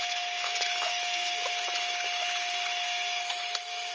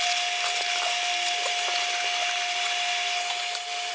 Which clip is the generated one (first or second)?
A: first